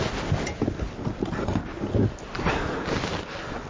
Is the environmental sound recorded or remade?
recorded